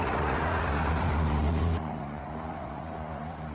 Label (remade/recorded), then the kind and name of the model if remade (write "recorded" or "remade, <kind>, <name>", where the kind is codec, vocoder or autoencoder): remade, vocoder, Vocos